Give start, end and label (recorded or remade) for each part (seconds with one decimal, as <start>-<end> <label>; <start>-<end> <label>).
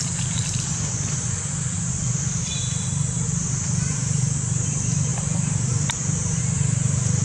0.0-7.2 remade